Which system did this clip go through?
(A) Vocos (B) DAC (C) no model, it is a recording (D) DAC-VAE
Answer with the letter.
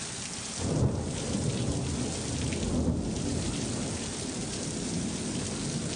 C